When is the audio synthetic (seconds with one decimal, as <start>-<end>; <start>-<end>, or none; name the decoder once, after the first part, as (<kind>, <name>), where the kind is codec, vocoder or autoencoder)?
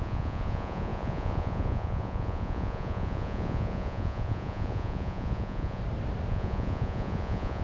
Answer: 0.0-5.8 (vocoder, Vocos); 6.3-7.6